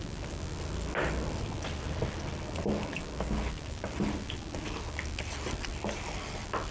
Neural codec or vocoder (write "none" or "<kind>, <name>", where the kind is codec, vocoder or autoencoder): none